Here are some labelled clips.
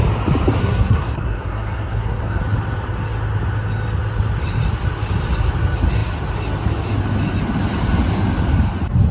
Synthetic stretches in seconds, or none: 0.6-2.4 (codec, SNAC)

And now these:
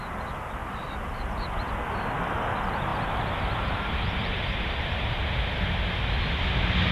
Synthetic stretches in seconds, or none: 0.6-1.7 (vocoder, BigVGAN v2); 2.9-4.9

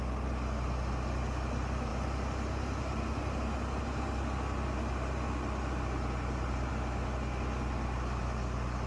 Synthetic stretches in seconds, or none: none

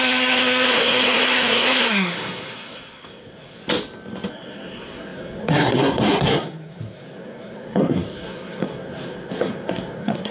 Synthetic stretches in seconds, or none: 0.0-3.6 (codec, SNAC); 4.3-10.3

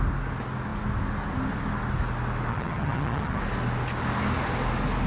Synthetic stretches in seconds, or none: 2.5-3.4 (vocoder, HiFi-GAN)

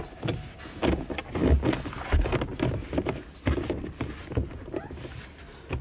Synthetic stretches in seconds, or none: none